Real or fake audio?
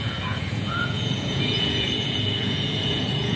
fake